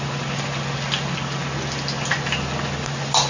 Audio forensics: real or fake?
real